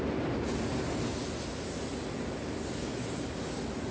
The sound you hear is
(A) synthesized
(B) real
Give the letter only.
B